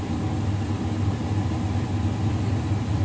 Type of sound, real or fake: real